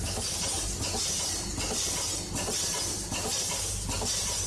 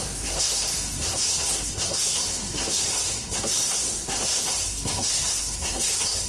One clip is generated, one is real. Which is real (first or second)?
first